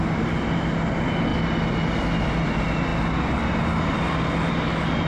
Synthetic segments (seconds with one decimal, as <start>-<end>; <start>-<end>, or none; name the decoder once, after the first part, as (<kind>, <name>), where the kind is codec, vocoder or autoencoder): none